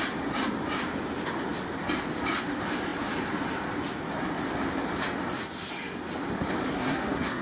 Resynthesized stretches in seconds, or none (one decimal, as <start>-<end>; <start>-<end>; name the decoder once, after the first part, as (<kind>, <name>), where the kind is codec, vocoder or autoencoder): 6.7-7.4 (codec, SNAC)